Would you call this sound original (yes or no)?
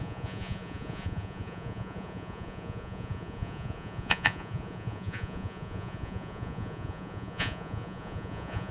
no